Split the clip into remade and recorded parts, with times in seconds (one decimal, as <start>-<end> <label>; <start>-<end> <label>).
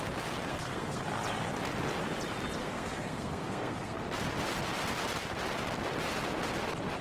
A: 0.0-0.5 recorded; 0.5-1.0 remade; 1.0-2.6 recorded; 2.6-4.0 remade; 4.0-7.0 recorded